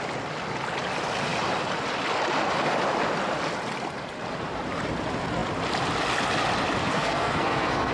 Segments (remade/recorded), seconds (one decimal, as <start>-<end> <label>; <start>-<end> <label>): 0.0-6.8 recorded; 6.8-7.9 remade